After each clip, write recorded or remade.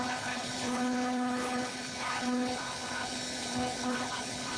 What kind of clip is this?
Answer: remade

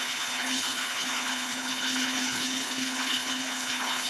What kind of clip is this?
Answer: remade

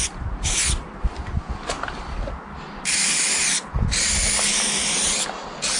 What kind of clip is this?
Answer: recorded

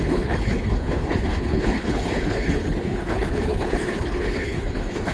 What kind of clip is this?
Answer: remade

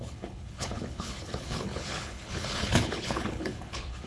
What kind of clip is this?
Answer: remade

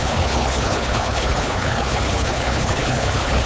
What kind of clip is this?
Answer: remade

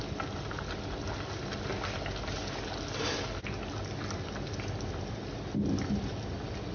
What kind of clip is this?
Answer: recorded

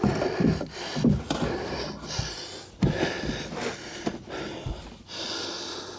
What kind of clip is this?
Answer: recorded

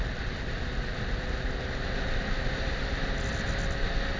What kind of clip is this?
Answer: recorded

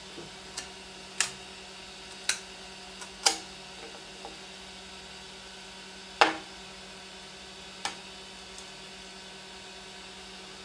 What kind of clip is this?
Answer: recorded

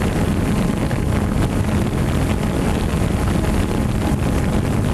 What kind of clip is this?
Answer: recorded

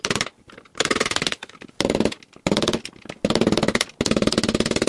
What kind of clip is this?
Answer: recorded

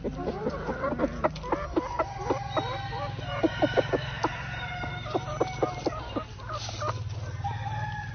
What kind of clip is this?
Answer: recorded